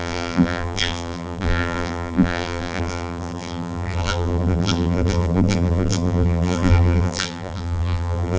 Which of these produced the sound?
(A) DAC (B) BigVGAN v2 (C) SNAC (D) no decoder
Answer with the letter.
B